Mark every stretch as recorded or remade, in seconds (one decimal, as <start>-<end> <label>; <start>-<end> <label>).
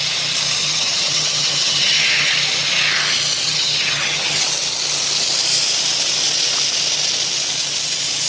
0.0-0.6 recorded; 0.6-2.3 remade; 2.3-3.4 recorded; 3.4-4.5 remade; 4.5-8.3 recorded